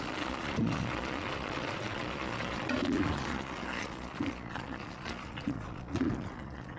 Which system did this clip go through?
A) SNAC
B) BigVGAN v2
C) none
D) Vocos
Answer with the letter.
D